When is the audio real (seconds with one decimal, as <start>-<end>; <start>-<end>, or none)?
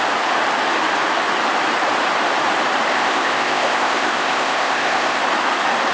0.0-2.9; 5.2-5.9